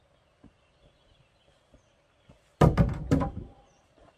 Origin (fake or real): real